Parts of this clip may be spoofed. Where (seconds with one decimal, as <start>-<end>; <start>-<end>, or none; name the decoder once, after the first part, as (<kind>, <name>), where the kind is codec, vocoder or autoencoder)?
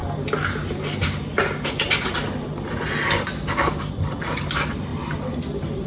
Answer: none